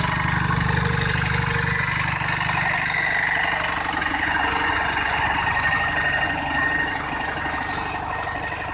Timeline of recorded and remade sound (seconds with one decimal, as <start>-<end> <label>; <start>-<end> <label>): 0.0-4.0 recorded; 4.0-7.6 remade; 7.6-8.7 recorded